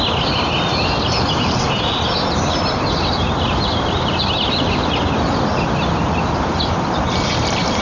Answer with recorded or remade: recorded